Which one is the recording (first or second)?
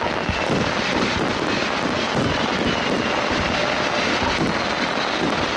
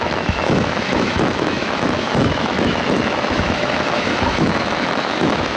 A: first